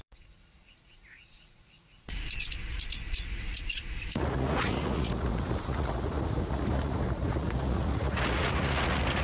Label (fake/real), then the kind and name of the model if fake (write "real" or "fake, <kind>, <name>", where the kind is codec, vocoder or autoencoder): fake, vocoder, Vocos